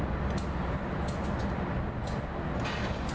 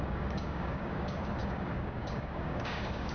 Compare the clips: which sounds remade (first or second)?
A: second